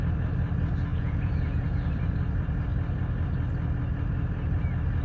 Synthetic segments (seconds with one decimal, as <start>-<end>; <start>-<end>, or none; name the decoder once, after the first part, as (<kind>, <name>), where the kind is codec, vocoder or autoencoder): 0.9-1.9 (vocoder, Vocos)